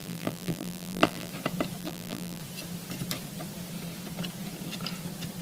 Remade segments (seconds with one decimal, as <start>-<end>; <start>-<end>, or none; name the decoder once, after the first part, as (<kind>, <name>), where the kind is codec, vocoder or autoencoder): 0.0-1.3 (vocoder, BigVGAN v2); 1.8-2.4